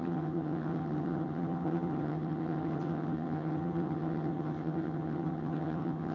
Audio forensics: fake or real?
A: fake